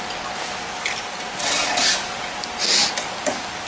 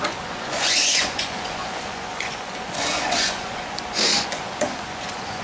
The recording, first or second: first